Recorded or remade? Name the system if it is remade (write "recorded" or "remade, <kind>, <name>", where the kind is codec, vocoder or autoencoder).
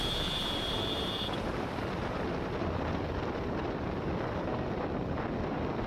remade, vocoder, BigVGAN v2